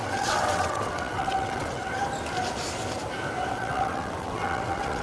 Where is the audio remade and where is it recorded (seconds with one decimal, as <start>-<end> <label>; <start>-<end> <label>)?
0.0-2.0 remade; 2.0-3.5 recorded; 3.5-5.0 remade